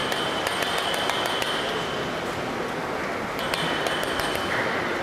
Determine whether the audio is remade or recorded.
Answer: recorded